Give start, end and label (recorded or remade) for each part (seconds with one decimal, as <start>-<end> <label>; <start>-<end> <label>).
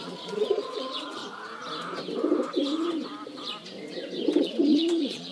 0.0-1.2 remade; 1.2-4.4 recorded; 4.4-5.3 remade